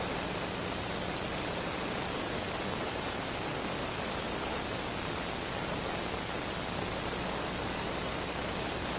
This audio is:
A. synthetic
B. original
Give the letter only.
B